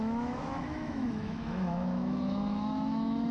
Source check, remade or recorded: remade